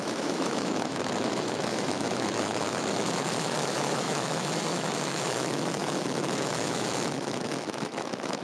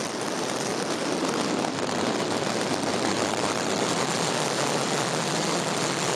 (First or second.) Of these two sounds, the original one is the second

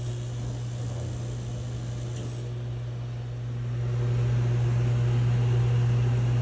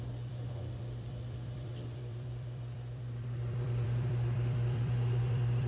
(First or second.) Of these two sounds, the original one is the first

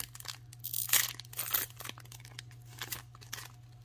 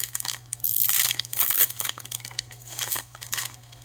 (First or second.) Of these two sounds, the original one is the first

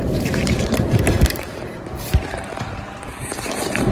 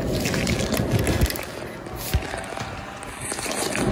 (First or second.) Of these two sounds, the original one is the second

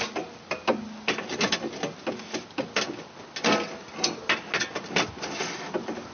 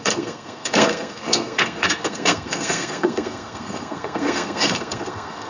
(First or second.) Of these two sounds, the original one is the first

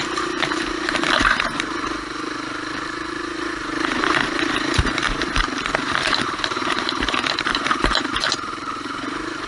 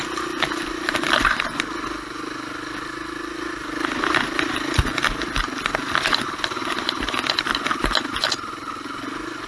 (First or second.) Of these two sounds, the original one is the second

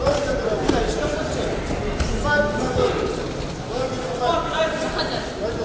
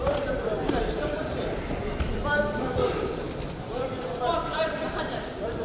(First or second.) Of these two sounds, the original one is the first